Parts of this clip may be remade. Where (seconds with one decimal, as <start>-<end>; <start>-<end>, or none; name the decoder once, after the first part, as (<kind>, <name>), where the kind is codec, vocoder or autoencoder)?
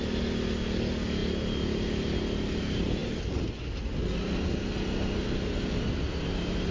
none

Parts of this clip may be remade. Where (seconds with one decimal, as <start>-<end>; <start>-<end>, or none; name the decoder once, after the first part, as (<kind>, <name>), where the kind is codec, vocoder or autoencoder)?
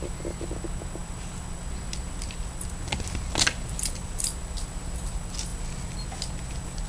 none